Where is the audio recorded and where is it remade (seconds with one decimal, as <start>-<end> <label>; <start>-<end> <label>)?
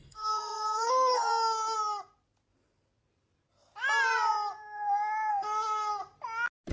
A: 0.0-1.3 remade; 1.3-5.3 recorded; 5.3-6.0 remade; 6.0-6.7 recorded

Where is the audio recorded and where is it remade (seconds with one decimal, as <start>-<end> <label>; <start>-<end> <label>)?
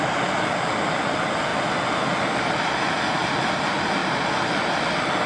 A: 0.0-5.3 recorded